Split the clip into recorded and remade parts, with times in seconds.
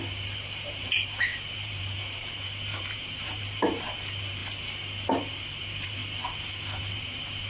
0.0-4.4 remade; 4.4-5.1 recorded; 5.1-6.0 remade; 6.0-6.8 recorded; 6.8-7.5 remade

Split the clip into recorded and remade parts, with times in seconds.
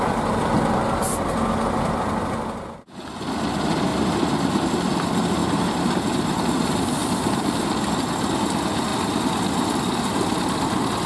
0.0-3.9 recorded; 3.9-4.7 remade; 4.7-5.4 recorded; 5.4-6.3 remade; 6.3-11.1 recorded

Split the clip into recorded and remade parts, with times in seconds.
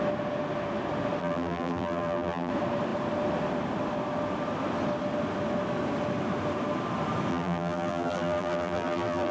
0.0-1.2 recorded; 1.2-2.5 remade; 2.5-7.3 recorded; 7.3-9.3 remade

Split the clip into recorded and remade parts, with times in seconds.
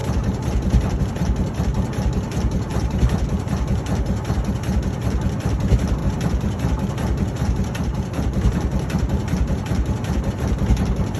0.0-1.0 remade; 1.0-2.7 recorded; 2.7-4.8 remade; 4.8-6.0 recorded; 6.0-10.3 remade; 10.3-11.2 recorded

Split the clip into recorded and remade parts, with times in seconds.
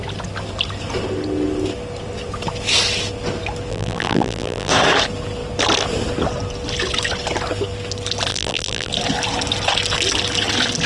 0.0-3.7 recorded; 3.7-4.7 remade; 4.7-8.3 recorded; 8.3-8.9 remade; 8.9-10.9 recorded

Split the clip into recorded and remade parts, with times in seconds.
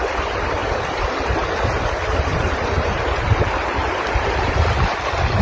0.0-0.6 recorded; 0.6-1.3 remade; 1.3-2.3 recorded; 2.3-4.5 remade; 4.5-5.4 recorded